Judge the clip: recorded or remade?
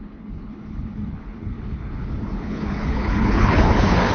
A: remade